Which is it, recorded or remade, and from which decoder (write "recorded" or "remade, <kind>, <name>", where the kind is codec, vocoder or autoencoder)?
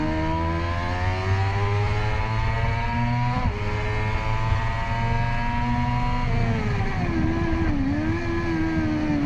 recorded